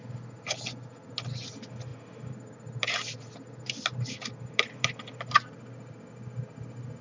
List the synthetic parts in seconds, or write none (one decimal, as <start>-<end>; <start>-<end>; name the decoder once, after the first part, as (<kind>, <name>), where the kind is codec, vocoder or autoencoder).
1.9-6.1 (vocoder, BigVGAN v2)